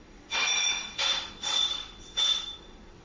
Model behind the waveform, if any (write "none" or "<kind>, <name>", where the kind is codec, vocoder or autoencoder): vocoder, WaveNeXt